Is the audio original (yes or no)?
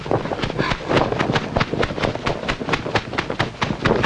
yes